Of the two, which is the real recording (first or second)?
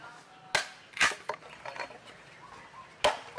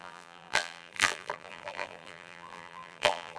first